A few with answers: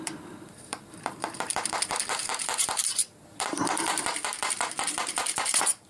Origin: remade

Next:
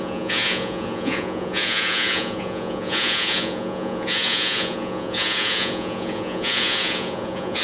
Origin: remade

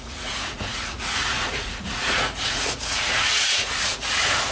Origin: remade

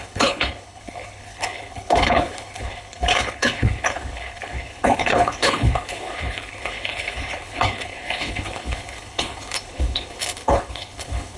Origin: remade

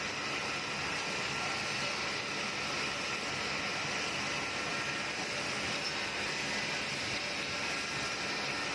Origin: recorded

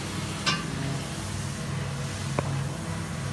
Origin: recorded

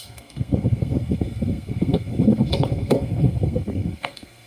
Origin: remade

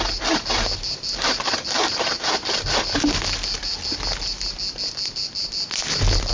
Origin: recorded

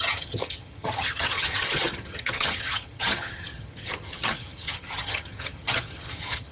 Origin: remade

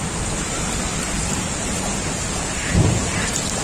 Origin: remade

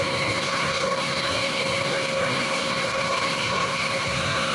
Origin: remade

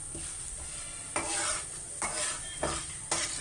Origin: remade